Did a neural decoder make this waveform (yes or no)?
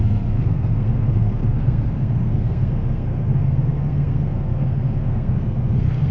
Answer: yes